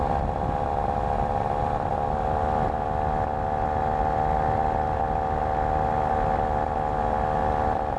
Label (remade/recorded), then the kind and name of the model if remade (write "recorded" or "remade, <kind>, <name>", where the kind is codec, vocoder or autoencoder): recorded